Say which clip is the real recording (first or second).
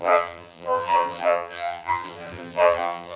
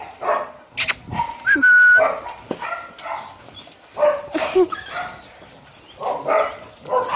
second